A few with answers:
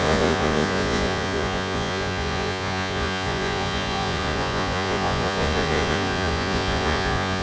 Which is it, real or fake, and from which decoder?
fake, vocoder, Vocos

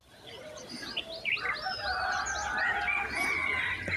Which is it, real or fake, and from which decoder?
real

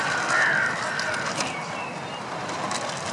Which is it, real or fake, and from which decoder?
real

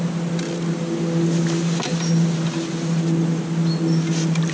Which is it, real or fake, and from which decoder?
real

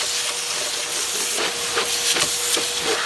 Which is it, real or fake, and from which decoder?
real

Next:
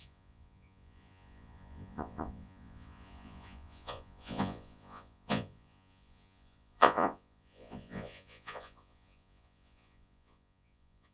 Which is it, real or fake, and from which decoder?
fake, vocoder, Vocos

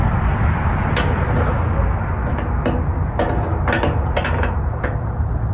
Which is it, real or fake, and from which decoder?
real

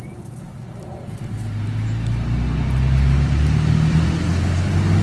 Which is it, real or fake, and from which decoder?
real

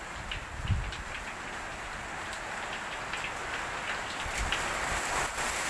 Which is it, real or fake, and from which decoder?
real